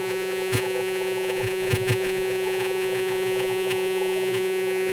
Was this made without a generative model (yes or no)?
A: no